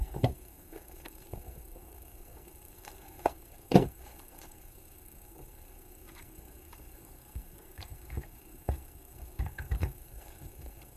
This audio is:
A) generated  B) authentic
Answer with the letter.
A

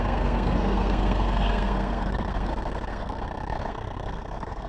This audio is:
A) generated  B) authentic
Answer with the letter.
A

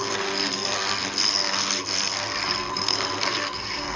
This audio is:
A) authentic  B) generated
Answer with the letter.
B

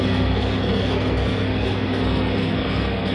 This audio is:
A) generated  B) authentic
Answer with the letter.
A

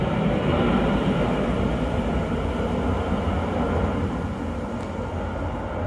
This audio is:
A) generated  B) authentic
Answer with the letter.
B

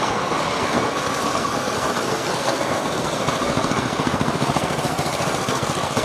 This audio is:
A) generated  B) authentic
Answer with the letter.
A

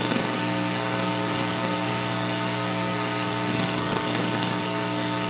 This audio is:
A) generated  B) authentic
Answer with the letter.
A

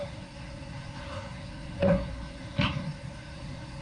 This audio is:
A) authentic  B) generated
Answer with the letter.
B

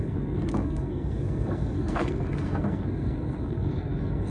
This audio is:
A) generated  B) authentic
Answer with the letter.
A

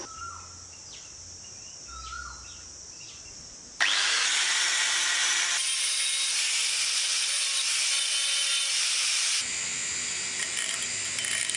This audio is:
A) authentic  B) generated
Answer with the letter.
A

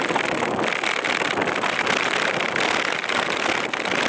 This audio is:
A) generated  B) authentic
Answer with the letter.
B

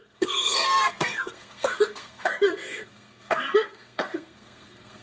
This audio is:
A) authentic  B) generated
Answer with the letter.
B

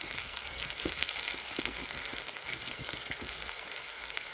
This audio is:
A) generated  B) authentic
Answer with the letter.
A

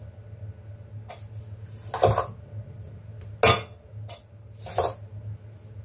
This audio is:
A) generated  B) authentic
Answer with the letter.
B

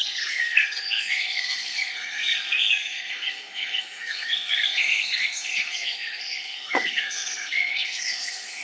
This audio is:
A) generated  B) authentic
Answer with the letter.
A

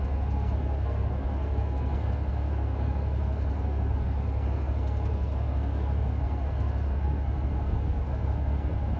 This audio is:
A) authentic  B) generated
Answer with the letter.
B